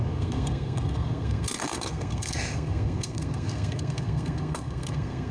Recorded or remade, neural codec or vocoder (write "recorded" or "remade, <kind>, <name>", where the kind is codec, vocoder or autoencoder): remade, codec, SNAC